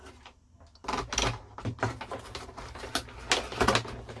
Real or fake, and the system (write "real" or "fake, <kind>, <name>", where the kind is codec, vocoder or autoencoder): real